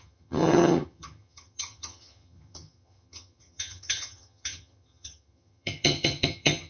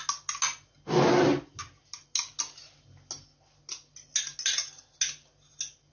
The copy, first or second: first